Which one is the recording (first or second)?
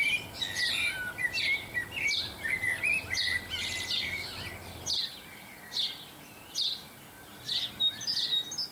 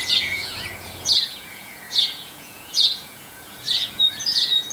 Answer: first